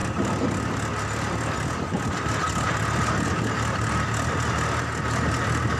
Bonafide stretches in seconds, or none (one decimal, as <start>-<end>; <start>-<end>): 0.0-5.8